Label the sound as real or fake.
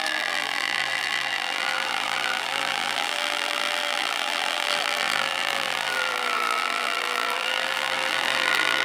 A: fake